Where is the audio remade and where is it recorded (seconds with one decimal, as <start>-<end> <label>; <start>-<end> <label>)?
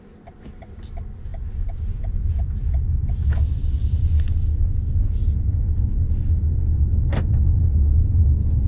0.0-1.3 recorded; 1.3-3.1 remade; 3.1-8.7 recorded